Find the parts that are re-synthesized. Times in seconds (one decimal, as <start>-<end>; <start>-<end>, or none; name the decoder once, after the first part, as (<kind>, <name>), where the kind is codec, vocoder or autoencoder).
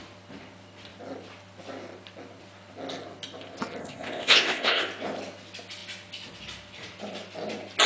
3.8-4.8 (codec, ZipCodec)